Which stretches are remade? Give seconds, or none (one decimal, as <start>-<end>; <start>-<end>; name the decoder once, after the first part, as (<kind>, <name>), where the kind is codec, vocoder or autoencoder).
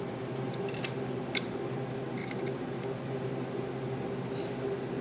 none